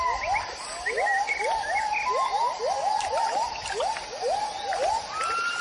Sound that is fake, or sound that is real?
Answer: real